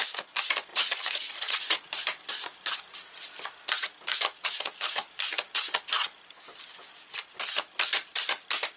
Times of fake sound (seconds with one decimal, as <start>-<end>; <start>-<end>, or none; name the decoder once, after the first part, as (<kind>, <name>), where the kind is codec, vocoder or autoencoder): 0.7-1.8 (vocoder, Vocos)